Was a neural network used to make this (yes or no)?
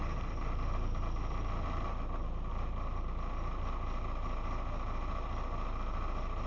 no